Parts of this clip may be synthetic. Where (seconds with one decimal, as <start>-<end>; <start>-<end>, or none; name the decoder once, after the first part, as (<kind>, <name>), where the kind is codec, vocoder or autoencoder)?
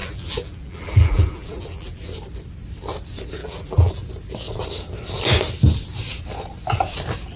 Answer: 0.0-2.0 (vocoder, BigVGAN v2); 3.4-4.1